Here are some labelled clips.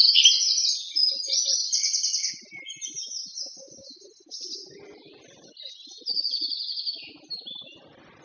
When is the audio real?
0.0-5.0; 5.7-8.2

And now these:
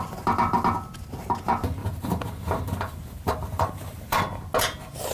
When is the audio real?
0.0-1.8; 4.2-5.1